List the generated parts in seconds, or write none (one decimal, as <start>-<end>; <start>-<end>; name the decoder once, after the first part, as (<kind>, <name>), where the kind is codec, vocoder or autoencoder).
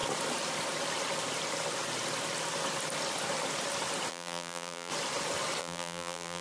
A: 4.1-4.9 (vocoder, BigVGAN v2); 5.6-6.4